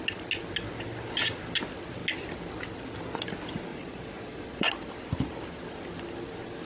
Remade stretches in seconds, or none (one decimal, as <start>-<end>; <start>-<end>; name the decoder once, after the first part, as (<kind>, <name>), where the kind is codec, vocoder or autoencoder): 3.7-4.7 (vocoder, Vocos)